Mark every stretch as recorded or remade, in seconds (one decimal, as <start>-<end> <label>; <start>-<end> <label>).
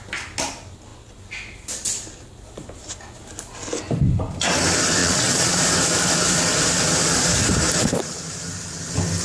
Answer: 0.0-5.0 recorded; 5.0-5.6 remade; 5.6-9.2 recorded